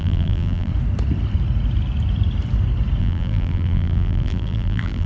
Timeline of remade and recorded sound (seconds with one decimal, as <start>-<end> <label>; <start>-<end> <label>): 0.0-0.7 remade; 0.7-3.0 recorded; 3.0-5.1 remade